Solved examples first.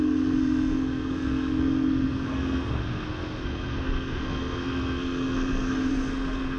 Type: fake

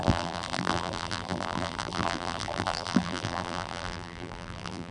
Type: fake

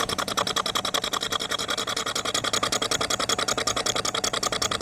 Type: real